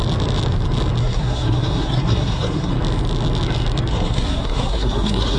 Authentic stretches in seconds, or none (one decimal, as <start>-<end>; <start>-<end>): 0.0-1.0; 2.7-3.9